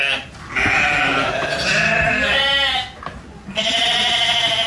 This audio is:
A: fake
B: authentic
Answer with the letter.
B